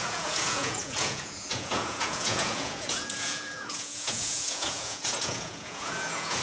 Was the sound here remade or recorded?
remade